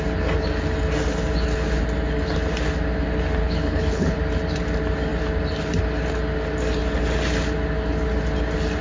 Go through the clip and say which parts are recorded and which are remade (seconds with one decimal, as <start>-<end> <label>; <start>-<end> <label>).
0.0-3.4 recorded; 3.4-4.2 remade; 4.2-8.8 recorded